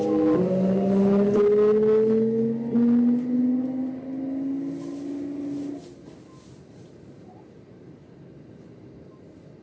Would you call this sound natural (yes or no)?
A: yes